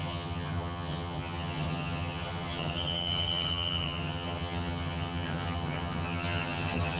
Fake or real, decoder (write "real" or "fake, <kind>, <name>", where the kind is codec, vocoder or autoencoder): fake, vocoder, HiFi-GAN